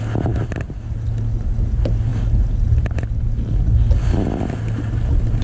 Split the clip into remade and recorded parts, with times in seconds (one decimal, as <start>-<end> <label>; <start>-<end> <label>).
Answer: 0.0-5.4 recorded